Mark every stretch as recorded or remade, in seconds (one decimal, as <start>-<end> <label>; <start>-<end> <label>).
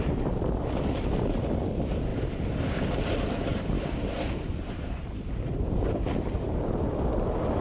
0.0-3.5 recorded; 3.5-6.6 remade; 6.6-7.6 recorded